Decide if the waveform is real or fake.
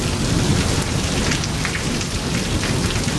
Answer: real